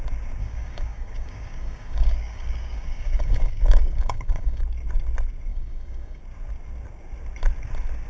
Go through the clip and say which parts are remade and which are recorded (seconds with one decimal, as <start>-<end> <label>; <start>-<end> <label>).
0.0-0.4 recorded; 0.4-4.6 remade; 4.6-5.5 recorded; 5.5-6.2 remade; 6.2-8.1 recorded